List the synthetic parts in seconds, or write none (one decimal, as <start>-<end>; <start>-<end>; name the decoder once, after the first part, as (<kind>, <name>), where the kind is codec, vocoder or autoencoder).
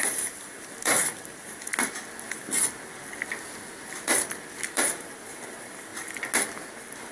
0.0-1.7 (vocoder, BigVGAN v2); 4.7-5.9